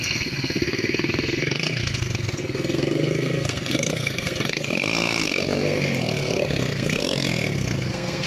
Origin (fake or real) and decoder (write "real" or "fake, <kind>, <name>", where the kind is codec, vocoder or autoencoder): fake, codec, SNAC